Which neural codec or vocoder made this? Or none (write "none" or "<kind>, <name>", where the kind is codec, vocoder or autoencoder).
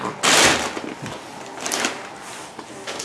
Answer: none